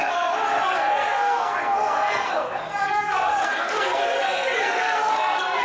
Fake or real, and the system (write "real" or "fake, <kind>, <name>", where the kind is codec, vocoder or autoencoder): fake, codec, SNAC